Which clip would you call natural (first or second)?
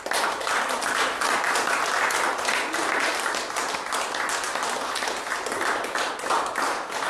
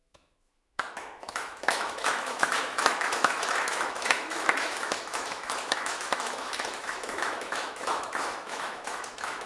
first